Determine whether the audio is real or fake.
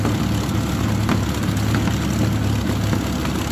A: real